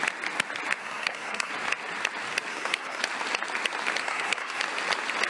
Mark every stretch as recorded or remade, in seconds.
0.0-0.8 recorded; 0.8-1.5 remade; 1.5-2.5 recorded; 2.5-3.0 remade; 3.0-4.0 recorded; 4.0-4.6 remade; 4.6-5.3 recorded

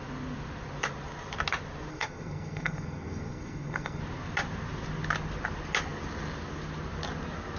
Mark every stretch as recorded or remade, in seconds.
0.0-1.9 recorded; 1.9-4.0 remade; 4.0-7.6 recorded

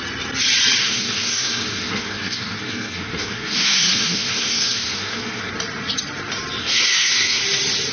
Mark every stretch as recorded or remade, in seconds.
0.0-0.8 recorded; 0.8-5.5 remade; 5.5-6.6 recorded; 6.6-7.4 remade; 7.4-7.9 recorded

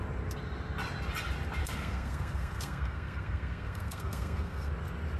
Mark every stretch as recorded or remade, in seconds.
0.0-1.6 recorded; 1.6-4.7 remade; 4.7-5.2 recorded

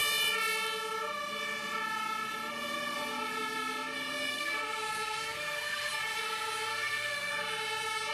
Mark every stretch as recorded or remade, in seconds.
0.0-4.3 recorded; 4.3-6.2 remade; 6.2-6.7 recorded; 6.7-7.3 remade; 7.3-8.1 recorded

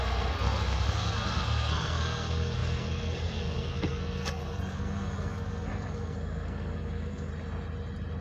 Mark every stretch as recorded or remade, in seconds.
0.0-7.3 remade; 7.3-8.2 recorded